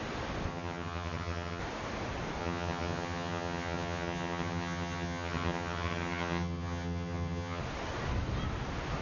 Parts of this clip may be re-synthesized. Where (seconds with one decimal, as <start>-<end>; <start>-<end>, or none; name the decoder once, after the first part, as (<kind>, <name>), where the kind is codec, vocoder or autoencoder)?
0.5-1.6 (vocoder, HiFi-GAN); 2.4-7.6